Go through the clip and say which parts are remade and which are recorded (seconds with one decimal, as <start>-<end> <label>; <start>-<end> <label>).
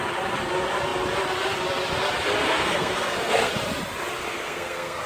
0.0-2.4 recorded; 2.4-3.5 remade; 3.5-4.2 recorded; 4.2-5.1 remade